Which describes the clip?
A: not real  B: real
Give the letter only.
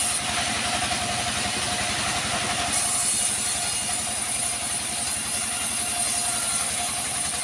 B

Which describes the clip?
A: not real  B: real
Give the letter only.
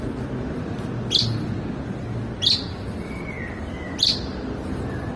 B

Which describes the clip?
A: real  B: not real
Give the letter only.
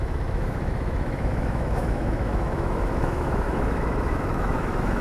B